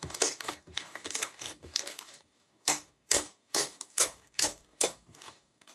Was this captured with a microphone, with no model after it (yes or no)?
no